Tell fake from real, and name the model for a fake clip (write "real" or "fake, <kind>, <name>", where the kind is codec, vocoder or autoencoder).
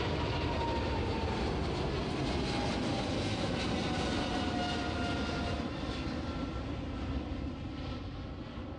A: real